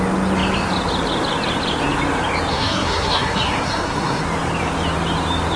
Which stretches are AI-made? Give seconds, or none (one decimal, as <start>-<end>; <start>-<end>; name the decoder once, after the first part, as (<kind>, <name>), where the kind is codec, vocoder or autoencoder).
2.5-4.2 (codec, SNAC)